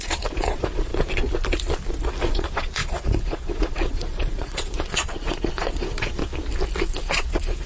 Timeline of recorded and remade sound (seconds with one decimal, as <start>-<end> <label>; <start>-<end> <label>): 0.0-0.9 remade; 0.9-2.3 recorded; 2.3-6.2 remade; 6.2-7.0 recorded; 7.0-7.7 remade